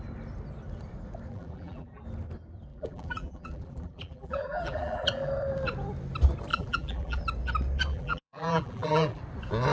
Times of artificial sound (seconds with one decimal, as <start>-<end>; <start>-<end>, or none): 1.3-2.0; 2.7-5.3; 6.5-7.2; 7.9-9.2